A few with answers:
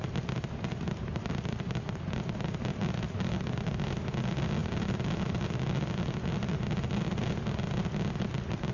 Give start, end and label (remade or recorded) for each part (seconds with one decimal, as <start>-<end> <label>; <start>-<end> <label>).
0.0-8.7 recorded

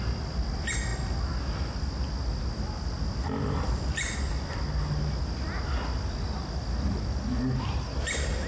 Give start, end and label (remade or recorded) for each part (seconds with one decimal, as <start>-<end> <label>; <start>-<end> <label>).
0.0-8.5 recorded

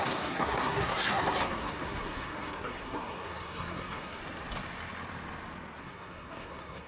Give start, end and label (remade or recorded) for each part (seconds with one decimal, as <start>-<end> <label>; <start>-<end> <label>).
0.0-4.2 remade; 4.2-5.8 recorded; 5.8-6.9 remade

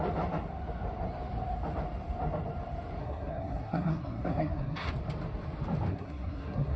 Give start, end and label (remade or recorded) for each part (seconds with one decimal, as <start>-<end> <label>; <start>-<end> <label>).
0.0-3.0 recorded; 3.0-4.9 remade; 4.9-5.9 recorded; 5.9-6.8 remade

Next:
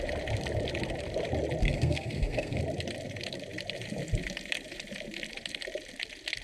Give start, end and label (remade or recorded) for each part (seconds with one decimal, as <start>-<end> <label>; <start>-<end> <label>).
0.0-1.6 recorded; 1.6-2.6 remade; 2.6-6.4 recorded

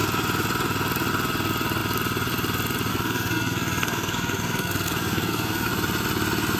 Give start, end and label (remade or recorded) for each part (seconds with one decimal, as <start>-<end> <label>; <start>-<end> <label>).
0.0-2.9 recorded; 2.9-5.7 remade; 5.7-6.6 recorded

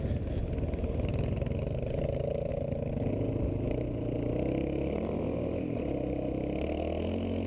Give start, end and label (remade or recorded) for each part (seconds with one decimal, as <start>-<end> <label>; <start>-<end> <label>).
0.0-7.5 recorded